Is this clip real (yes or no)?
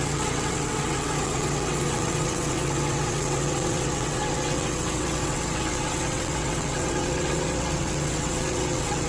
no